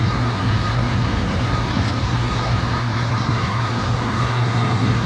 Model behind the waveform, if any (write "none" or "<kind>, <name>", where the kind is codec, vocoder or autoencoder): codec, SNAC